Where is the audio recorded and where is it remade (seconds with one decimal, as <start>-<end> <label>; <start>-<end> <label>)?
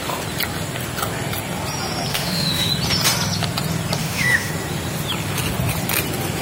0.0-2.1 recorded; 2.1-2.7 remade; 2.7-4.0 recorded; 4.0-4.5 remade; 4.5-6.4 recorded